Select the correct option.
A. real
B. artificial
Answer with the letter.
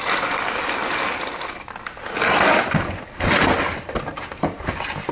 A